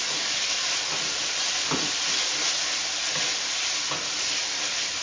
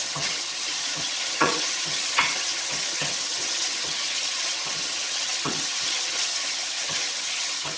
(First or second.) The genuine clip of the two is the first